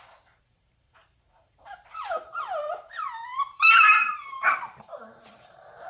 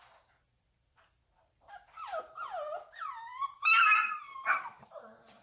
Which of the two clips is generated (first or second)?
first